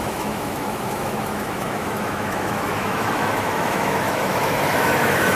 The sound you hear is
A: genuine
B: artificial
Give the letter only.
B